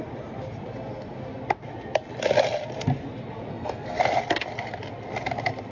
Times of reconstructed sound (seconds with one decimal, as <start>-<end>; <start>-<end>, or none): 3.5-4.0